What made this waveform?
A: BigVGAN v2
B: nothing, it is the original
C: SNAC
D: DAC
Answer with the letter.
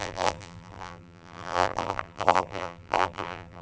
A